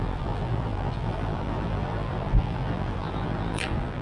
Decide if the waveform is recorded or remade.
remade